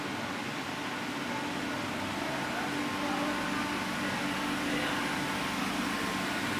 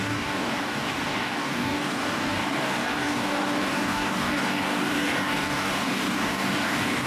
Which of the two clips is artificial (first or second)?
second